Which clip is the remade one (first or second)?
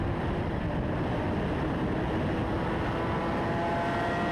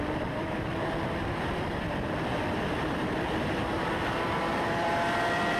second